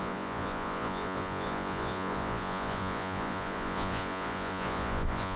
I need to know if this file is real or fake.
fake